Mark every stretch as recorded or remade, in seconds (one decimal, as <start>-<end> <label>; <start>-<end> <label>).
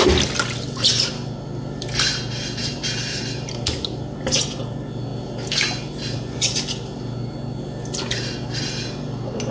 0.0-9.5 recorded